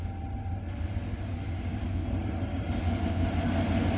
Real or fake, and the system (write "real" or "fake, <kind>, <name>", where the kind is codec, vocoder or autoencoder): real